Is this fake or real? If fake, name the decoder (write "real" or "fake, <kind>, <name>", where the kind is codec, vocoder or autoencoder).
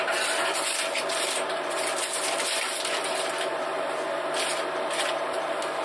fake, vocoder, BigVGAN v2